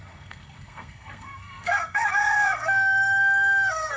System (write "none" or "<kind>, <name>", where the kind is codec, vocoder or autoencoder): codec, SNAC